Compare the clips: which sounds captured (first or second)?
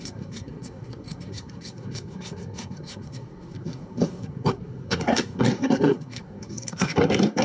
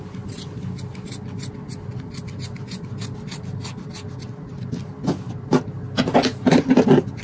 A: second